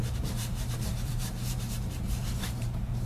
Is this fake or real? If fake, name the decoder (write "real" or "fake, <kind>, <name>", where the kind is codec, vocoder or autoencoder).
fake, vocoder, BigVGAN v2